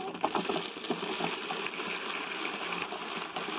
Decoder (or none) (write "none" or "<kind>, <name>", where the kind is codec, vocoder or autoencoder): none